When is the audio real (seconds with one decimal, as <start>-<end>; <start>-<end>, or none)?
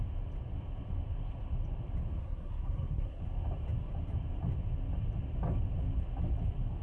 0.0-2.2; 3.2-6.8